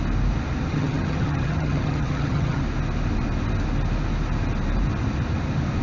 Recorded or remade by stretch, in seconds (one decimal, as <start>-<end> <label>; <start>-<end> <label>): 0.0-0.7 recorded; 0.7-2.6 remade; 2.6-5.8 recorded